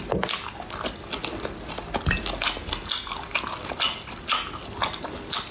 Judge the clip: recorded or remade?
recorded